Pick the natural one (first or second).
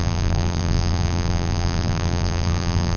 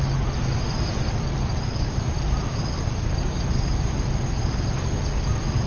second